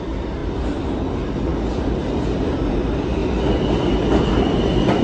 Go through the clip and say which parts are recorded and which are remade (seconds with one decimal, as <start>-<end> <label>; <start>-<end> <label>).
0.0-5.0 recorded